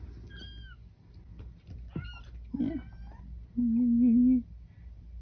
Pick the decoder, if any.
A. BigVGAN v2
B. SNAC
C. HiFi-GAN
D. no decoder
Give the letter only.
D